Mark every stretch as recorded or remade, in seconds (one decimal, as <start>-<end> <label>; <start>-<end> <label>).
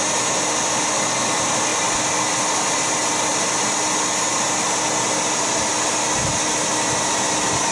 0.0-7.7 recorded